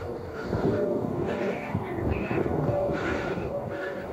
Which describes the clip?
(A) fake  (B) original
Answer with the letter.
A